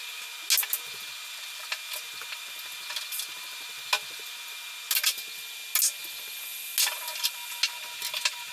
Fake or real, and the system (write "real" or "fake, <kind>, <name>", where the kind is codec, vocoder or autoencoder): real